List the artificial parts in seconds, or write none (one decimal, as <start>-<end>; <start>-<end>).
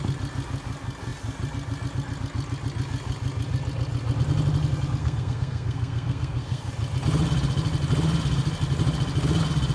5.0-6.7